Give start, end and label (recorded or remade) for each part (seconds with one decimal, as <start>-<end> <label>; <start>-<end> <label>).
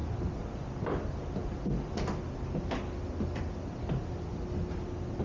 0.0-5.2 recorded